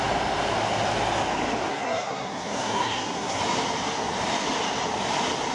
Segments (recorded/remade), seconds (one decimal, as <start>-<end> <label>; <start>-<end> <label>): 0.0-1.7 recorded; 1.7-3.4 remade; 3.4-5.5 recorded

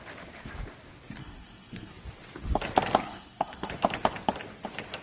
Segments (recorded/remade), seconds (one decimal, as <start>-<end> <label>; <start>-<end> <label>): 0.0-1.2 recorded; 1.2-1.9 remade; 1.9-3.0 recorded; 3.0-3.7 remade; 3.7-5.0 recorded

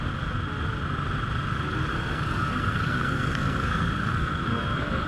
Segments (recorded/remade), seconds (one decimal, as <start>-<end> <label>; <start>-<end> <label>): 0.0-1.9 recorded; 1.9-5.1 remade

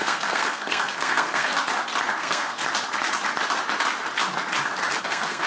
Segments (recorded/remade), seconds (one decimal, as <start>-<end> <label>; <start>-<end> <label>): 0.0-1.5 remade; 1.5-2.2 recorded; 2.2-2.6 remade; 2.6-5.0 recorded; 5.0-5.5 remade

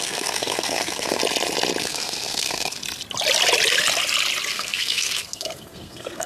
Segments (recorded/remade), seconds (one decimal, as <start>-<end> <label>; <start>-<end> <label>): 0.0-1.2 remade; 1.2-1.8 recorded; 1.8-2.8 remade; 2.8-4.5 recorded; 4.5-6.3 remade

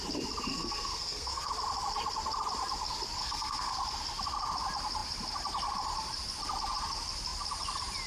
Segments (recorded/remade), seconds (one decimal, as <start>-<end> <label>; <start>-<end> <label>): 0.0-0.5 recorded; 0.5-1.5 remade; 1.5-3.2 recorded; 3.2-3.8 remade; 3.8-8.1 recorded

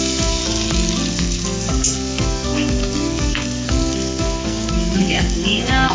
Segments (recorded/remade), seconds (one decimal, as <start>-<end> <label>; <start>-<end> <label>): 0.0-0.4 remade; 0.4-1.1 recorded; 1.1-5.9 remade

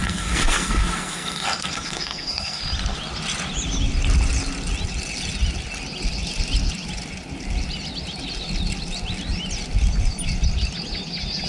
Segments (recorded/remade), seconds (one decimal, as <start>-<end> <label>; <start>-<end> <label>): 0.0-2.6 remade; 2.6-11.5 recorded